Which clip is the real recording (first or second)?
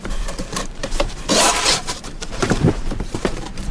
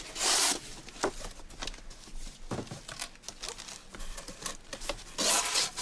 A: second